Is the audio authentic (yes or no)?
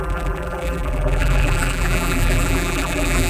no